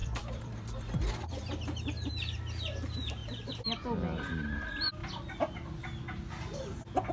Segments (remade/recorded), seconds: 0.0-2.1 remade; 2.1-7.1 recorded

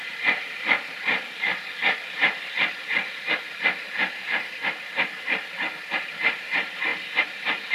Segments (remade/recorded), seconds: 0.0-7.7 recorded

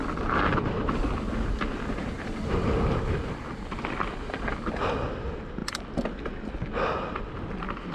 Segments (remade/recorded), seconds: 0.0-7.9 recorded